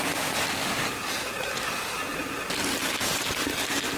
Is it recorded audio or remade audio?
recorded